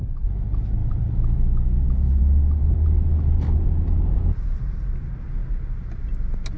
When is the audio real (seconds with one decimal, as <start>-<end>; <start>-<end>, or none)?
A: 0.0-6.6